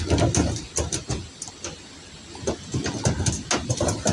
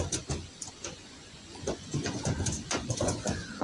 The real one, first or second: first